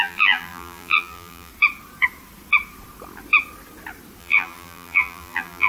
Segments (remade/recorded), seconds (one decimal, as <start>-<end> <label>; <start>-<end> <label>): 0.0-1.5 remade; 1.5-4.2 recorded; 4.2-5.7 remade